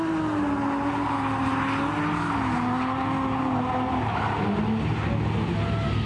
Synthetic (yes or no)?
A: no